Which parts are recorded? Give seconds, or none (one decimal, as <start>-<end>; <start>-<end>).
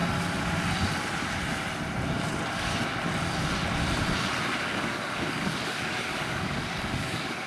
0.0-2.5; 2.9-4.6